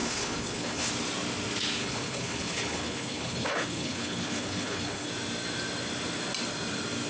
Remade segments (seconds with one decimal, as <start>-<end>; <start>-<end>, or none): 0.0-0.9; 1.8-5.1

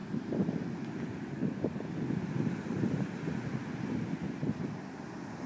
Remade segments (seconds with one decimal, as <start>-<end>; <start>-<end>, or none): 0.0-0.5